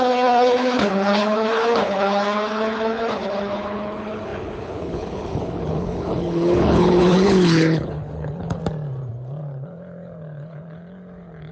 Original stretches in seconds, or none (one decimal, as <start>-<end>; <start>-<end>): 8.6-9.4